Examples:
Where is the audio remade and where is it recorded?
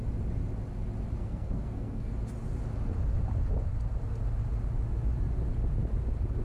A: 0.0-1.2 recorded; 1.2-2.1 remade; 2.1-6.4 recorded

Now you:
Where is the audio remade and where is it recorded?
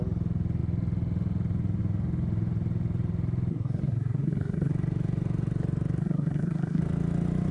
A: 0.0-3.5 recorded; 3.5-4.7 remade; 4.7-6.0 recorded; 6.0-6.8 remade; 6.8-7.5 recorded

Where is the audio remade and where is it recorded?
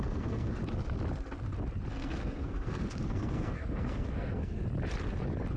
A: 0.0-0.6 remade; 0.6-1.9 recorded; 1.9-4.6 remade; 4.6-5.6 recorded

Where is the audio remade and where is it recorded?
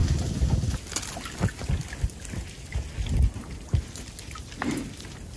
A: 0.0-5.4 recorded